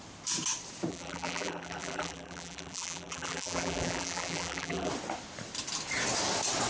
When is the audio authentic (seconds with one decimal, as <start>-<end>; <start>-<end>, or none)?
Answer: 0.0-0.9; 4.9-6.7